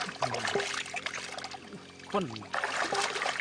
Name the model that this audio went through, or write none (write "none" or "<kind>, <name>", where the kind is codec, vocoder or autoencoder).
none